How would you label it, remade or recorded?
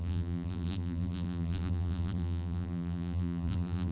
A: remade